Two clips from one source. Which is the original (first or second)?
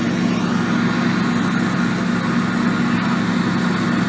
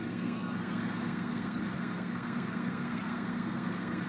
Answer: first